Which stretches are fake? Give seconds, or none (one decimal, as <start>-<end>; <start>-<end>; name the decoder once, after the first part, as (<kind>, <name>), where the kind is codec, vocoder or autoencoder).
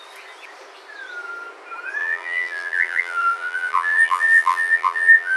2.0-5.4 (vocoder, BigVGAN v2)